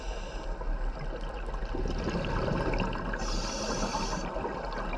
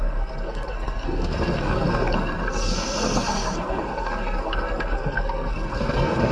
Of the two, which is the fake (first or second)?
second